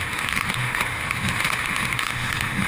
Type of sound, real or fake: fake